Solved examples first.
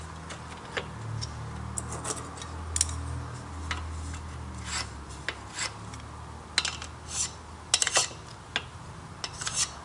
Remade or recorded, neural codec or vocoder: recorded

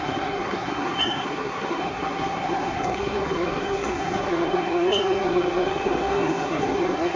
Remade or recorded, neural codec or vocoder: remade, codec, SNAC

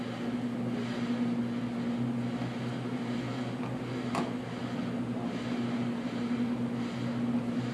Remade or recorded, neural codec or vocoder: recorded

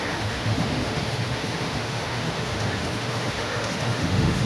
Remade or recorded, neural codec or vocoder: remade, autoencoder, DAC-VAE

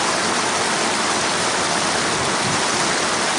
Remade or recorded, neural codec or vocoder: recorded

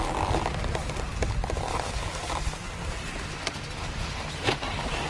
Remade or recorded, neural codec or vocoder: recorded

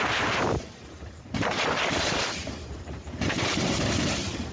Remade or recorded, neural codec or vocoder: remade, vocoder, BigVGAN v2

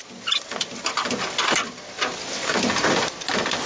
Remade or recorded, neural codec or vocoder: remade, vocoder, BigVGAN v2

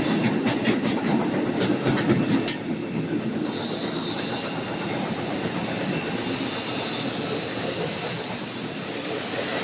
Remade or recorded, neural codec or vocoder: recorded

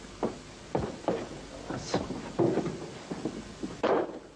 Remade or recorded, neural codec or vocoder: recorded